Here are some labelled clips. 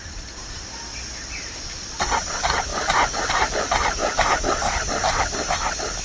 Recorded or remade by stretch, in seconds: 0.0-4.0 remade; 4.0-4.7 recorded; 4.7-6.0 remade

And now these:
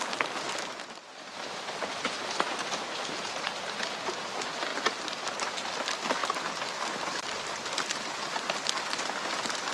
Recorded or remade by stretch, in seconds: 0.0-6.2 recorded; 6.2-9.0 remade; 9.0-9.7 recorded

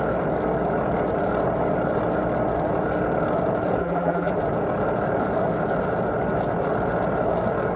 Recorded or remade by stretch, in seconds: 0.0-3.8 recorded; 3.8-4.3 remade; 4.3-7.8 recorded

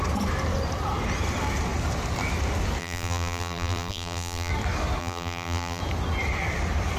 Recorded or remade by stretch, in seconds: 0.0-2.8 recorded; 2.8-4.5 remade; 4.5-5.0 recorded; 5.0-5.8 remade; 5.8-7.0 recorded

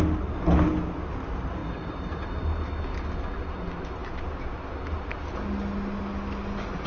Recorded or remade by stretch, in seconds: 0.0-1.6 recorded; 1.6-2.2 remade; 2.2-6.9 recorded

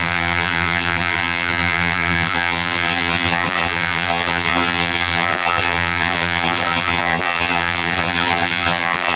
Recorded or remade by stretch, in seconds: 0.0-9.2 remade

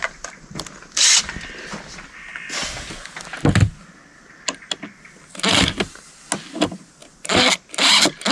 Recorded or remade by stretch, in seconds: 0.0-8.3 recorded